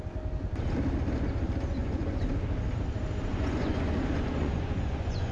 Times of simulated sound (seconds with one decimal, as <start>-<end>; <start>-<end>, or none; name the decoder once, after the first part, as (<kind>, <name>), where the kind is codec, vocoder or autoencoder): 1.8-2.3 (vocoder, Vocos); 3.3-5.3